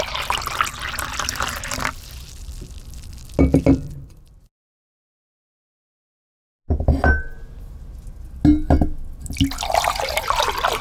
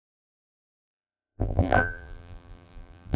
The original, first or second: first